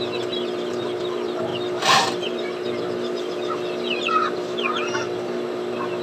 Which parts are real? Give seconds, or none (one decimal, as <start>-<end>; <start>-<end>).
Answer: 0.0-6.0